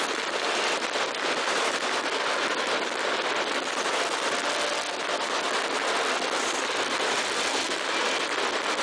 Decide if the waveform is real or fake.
real